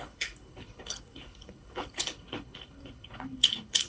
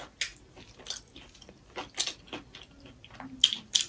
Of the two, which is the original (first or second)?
second